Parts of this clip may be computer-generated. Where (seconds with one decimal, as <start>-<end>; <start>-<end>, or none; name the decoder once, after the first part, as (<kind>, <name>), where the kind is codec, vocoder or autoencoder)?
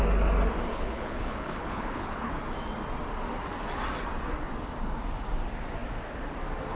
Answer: 0.7-2.3 (codec, HILCodec)